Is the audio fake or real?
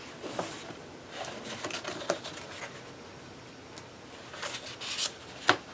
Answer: real